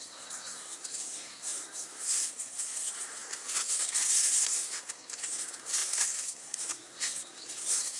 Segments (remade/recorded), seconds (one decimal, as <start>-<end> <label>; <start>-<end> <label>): 0.0-8.0 remade